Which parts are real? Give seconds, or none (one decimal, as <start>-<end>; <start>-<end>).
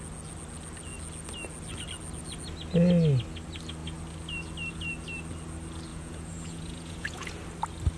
0.0-5.9; 7.3-8.0